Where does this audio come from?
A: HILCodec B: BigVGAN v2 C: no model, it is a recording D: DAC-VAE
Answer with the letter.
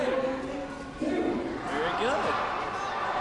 C